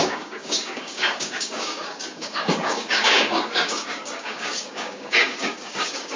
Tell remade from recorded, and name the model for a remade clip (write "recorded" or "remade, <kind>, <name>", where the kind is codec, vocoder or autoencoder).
remade, codec, DAC